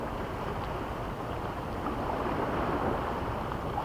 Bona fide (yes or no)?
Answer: yes